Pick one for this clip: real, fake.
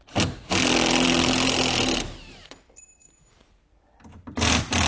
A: real